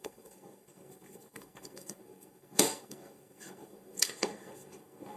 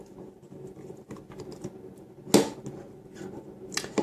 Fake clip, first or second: first